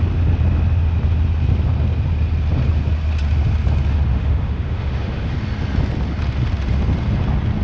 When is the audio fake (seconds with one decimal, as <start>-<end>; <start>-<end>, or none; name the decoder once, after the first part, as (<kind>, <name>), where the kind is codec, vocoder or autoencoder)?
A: 4.1-5.3 (autoencoder, DAC-VAE)